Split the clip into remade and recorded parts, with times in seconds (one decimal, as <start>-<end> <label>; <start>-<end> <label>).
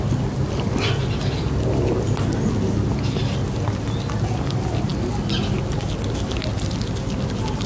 0.0-7.7 recorded